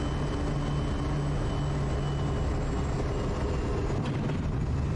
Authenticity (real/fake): real